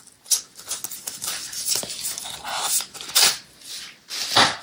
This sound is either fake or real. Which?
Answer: real